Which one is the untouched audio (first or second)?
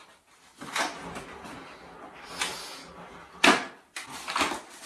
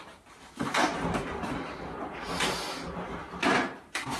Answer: first